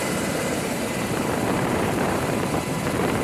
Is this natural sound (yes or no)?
no